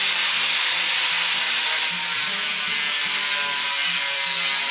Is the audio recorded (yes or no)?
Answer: yes